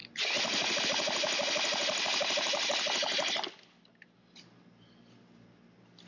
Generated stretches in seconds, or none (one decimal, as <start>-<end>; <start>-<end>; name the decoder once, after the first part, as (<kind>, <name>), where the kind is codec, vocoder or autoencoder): none